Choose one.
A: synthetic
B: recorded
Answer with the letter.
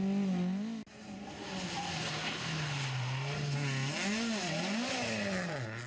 B